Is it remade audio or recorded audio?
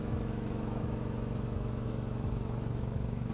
remade